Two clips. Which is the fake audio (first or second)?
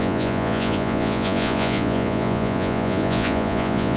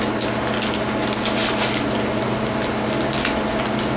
first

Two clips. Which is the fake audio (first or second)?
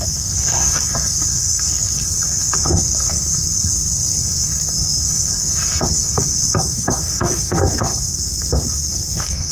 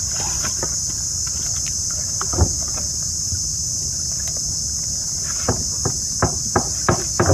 first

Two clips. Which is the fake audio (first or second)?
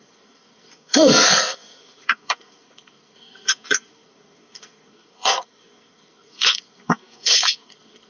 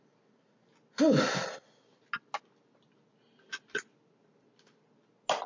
first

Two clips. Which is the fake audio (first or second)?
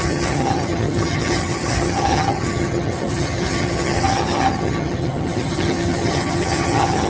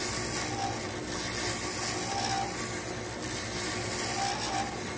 first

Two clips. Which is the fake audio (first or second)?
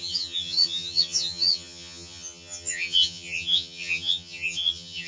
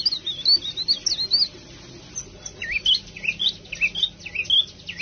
first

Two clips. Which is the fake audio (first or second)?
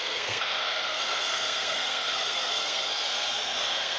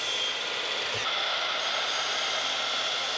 first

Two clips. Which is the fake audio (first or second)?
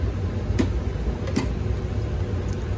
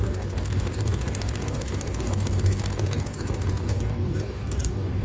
second